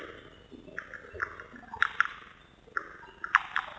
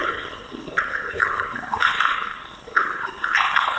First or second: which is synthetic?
second